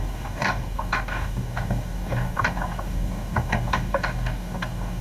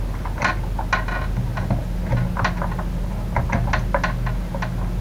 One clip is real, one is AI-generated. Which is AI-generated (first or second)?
first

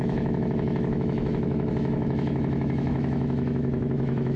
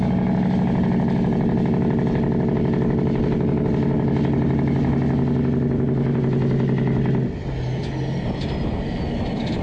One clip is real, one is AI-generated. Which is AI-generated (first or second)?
first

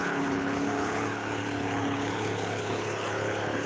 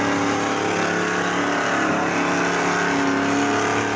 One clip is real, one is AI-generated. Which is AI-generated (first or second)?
first